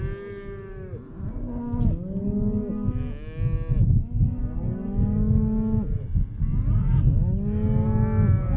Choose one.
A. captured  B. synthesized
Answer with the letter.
A